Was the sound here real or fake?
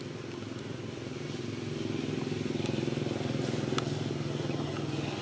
real